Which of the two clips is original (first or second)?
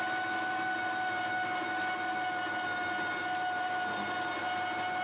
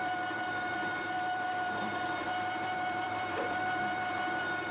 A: first